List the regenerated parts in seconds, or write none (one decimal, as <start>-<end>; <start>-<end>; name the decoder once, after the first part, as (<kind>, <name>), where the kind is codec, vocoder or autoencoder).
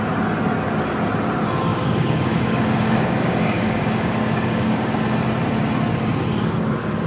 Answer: 1.7-5.0 (codec, DAC)